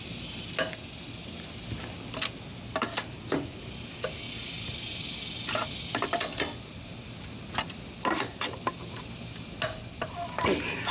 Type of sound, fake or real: real